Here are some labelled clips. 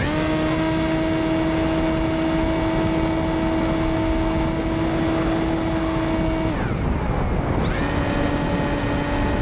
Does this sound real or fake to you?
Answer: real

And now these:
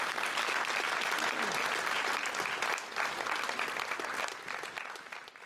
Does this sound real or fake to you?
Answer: real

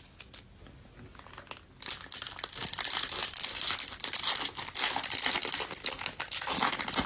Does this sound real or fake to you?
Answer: real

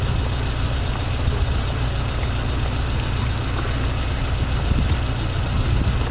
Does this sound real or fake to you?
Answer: real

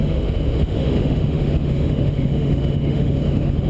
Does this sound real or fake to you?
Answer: fake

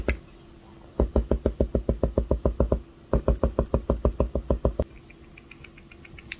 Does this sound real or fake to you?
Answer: real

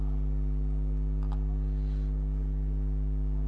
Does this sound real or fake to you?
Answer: real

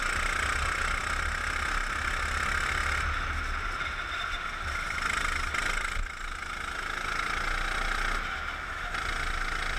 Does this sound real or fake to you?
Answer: real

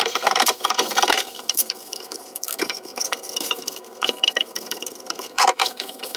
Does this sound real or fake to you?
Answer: fake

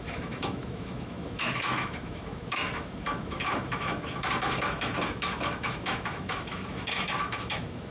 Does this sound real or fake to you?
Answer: fake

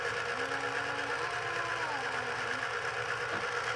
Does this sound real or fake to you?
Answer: real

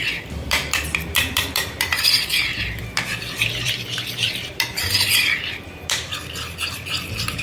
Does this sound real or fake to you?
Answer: fake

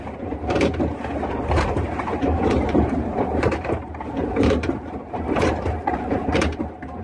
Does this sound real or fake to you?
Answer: fake